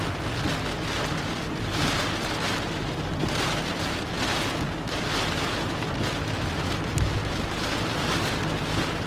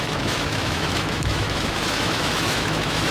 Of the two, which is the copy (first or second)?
second